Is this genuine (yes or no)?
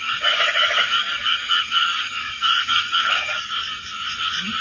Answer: no